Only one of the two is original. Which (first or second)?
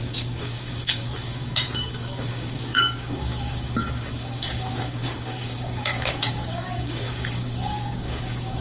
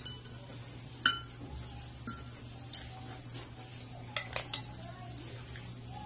second